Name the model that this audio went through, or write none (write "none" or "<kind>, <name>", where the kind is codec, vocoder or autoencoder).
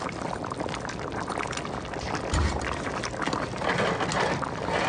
none